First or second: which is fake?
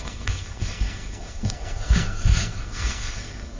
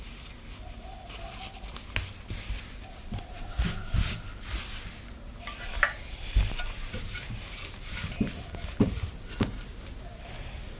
first